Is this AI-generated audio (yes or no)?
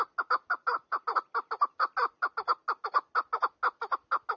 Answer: no